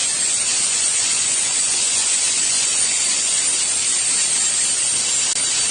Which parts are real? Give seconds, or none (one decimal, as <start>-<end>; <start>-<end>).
3.4-5.7